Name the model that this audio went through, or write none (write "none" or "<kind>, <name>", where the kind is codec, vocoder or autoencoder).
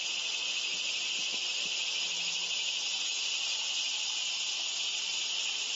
none